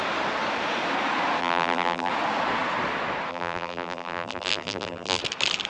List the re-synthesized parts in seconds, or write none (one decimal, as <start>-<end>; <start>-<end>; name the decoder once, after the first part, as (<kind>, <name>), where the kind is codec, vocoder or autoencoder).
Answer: 1.4-2.1 (vocoder, BigVGAN v2); 3.3-5.2